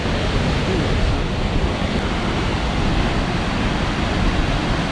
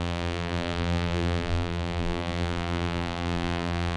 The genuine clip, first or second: first